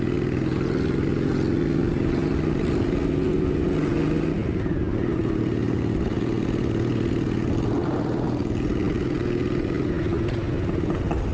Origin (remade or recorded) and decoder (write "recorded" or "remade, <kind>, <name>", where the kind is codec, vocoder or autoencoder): recorded